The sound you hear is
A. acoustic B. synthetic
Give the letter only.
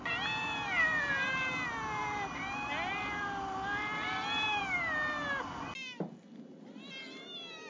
A